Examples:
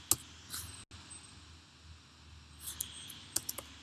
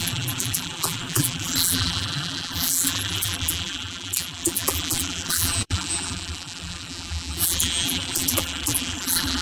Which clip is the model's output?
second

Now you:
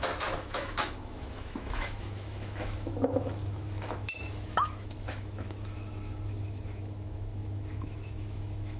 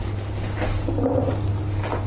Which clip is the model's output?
first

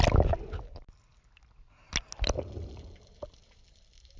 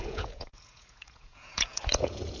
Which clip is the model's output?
second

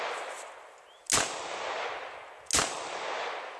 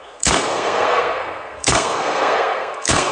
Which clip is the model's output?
second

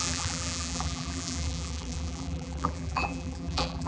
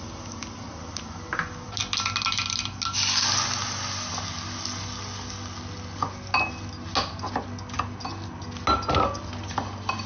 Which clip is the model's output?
first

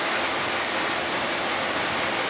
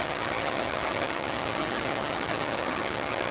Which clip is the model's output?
second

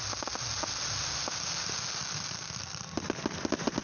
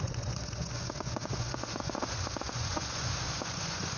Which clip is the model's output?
second